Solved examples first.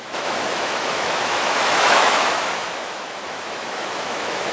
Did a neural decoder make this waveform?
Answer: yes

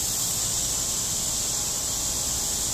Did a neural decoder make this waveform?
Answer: no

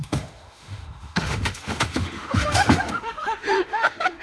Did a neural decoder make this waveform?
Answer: yes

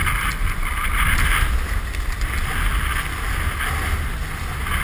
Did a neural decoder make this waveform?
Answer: no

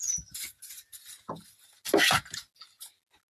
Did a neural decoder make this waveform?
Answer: no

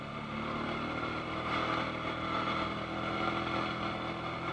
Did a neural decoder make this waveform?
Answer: no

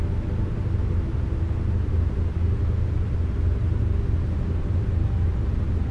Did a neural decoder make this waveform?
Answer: no